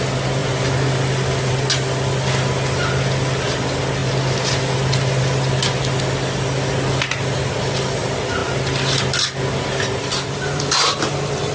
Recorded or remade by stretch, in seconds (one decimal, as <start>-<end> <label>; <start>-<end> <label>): 0.0-11.5 recorded